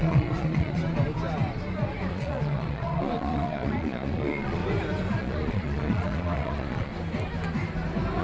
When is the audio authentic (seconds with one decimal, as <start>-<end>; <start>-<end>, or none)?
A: 0.8-2.1; 4.6-5.2; 6.9-8.2